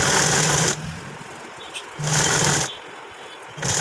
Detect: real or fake real